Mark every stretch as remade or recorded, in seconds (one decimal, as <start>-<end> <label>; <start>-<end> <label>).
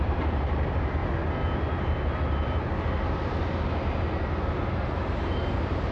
0.0-1.0 remade; 1.0-4.5 recorded; 4.5-5.9 remade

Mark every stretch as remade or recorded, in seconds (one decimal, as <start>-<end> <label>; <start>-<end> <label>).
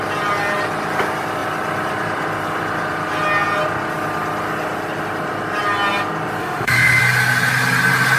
0.0-6.4 recorded; 6.4-7.0 remade; 7.0-8.2 recorded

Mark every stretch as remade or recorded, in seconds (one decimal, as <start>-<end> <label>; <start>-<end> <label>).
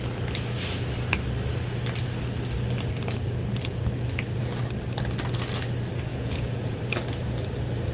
0.0-6.1 recorded; 6.1-6.8 remade; 6.8-7.9 recorded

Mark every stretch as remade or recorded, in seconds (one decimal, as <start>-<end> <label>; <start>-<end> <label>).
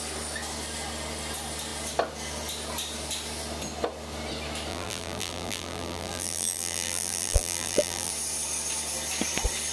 0.0-4.7 recorded; 4.7-8.1 remade; 8.1-9.7 recorded